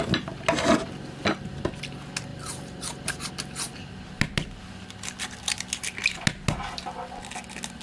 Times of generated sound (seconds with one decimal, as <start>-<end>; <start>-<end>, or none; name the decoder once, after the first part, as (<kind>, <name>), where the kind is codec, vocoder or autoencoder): 2.3-3.3 (vocoder, BigVGAN v2)